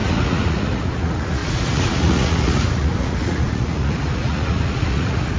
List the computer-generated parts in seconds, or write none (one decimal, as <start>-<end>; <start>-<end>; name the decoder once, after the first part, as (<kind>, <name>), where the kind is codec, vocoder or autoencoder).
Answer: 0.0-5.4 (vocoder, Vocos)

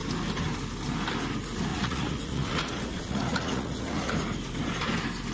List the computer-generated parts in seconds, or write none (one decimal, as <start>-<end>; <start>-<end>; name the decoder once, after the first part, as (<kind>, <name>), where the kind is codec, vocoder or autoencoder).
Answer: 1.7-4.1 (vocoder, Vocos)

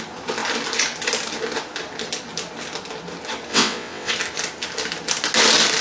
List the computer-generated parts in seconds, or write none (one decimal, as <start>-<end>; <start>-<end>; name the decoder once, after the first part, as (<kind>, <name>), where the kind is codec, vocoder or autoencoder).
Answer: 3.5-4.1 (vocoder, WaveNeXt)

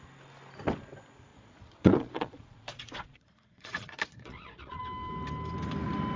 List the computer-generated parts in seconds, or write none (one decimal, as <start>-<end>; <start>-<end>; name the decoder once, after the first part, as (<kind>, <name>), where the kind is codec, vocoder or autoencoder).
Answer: 1.3-4.8 (vocoder, Vocos)

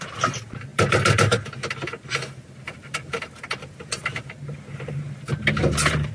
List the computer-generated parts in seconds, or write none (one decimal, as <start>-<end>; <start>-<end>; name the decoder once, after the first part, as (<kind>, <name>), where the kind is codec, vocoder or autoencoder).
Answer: none

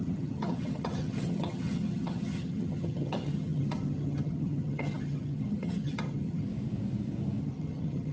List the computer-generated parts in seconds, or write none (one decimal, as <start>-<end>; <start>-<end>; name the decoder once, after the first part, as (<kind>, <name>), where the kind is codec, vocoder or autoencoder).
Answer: 0.0-6.5 (vocoder, HiFi-GAN); 7.4-8.1

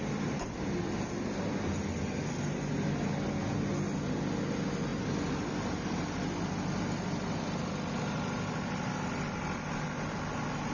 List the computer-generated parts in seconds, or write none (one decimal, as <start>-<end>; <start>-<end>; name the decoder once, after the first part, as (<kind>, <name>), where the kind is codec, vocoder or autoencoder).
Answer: none